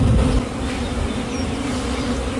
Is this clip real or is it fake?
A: real